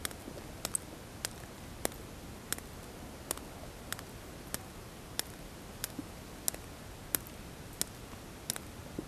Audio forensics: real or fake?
real